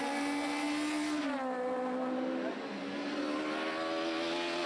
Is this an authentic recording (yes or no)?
yes